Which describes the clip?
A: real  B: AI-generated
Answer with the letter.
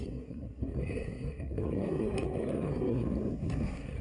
B